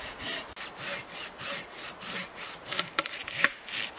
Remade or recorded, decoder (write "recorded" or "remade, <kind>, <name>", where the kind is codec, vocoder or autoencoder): recorded